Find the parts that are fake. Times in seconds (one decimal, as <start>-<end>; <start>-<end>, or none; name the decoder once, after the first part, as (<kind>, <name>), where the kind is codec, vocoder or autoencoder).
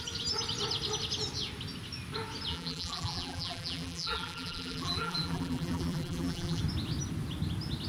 2.5-6.6 (vocoder, BigVGAN v2)